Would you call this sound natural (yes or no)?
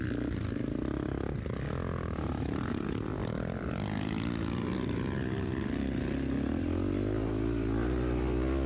yes